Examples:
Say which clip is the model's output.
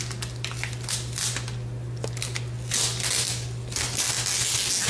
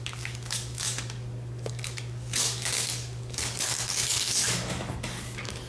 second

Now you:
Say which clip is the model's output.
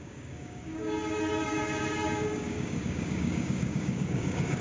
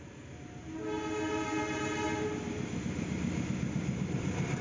first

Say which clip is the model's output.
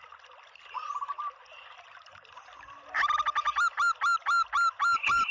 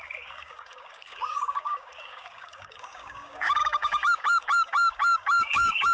second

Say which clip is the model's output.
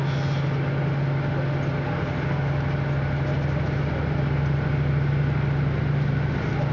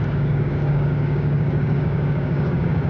second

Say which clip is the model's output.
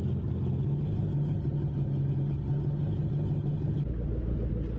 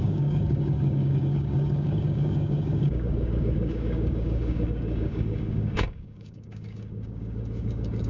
second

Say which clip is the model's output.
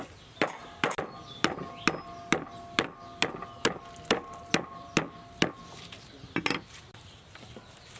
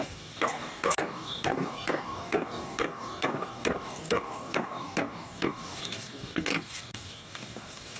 second